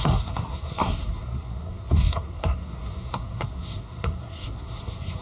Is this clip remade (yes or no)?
yes